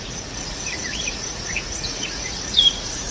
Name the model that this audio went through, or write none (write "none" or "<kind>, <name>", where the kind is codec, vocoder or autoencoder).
vocoder, Vocos